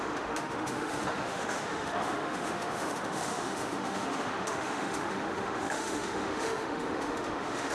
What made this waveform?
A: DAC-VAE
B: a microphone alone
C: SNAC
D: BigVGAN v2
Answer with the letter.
A